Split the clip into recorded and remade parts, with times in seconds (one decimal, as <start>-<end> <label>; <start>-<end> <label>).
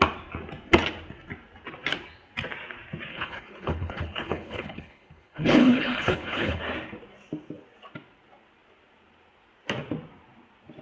0.0-3.1 recorded; 3.1-6.6 remade; 6.6-10.8 recorded